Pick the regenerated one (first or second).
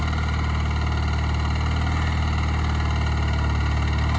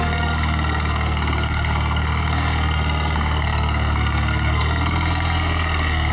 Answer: second